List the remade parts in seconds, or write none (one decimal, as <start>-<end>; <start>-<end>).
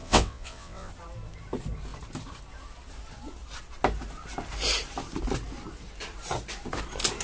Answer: 0.0-0.9